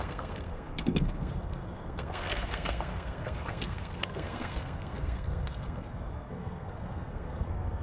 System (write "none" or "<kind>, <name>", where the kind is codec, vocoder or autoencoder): codec, SNAC